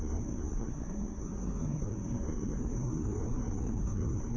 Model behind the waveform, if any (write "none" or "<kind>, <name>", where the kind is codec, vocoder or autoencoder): codec, SNAC